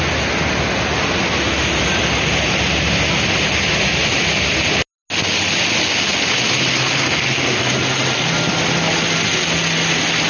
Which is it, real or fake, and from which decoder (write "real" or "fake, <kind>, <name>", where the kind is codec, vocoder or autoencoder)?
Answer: real